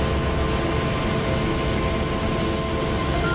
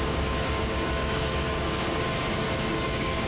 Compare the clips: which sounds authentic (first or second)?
first